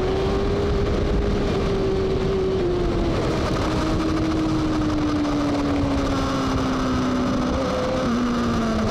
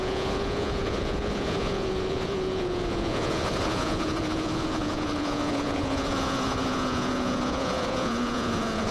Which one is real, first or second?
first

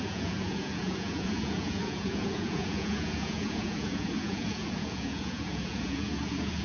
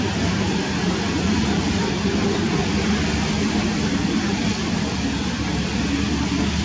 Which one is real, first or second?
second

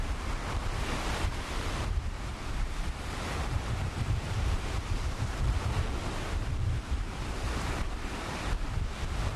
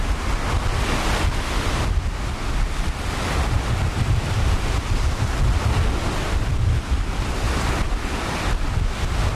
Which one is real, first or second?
second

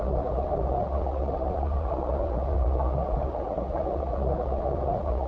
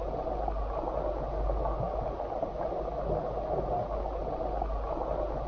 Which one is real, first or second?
second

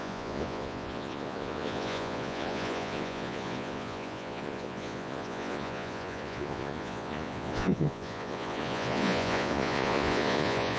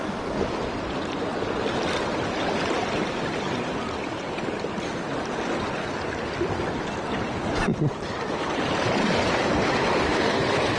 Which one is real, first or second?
second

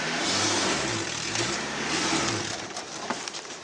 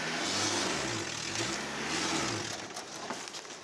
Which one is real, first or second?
second